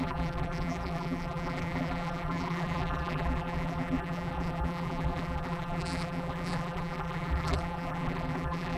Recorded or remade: remade